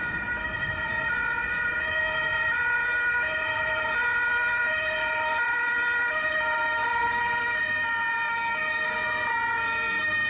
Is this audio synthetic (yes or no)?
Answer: no